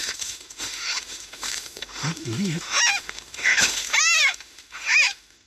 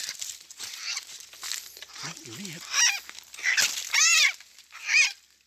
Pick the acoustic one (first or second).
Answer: second